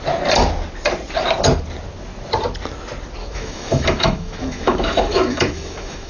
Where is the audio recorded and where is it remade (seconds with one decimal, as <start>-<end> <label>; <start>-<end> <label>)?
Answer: 0.0-3.2 recorded; 3.2-6.1 remade